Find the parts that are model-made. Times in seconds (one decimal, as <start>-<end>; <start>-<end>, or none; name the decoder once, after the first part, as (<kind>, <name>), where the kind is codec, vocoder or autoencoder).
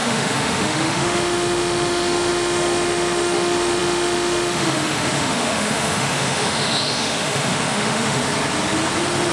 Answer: 0.0-8.2 (autoencoder, DAC-VAE)